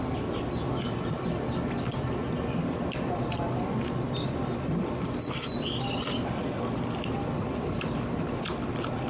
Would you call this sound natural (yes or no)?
yes